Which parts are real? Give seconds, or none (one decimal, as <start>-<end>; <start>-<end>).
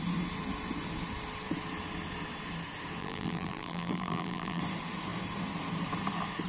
0.0-3.0; 4.6-6.5